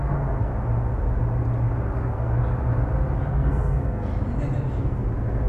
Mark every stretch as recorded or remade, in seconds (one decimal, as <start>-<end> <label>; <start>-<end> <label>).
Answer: 0.0-0.5 remade; 0.5-2.0 recorded; 2.0-2.4 remade; 2.4-3.3 recorded; 3.3-4.1 remade; 4.1-4.8 recorded; 4.8-5.5 remade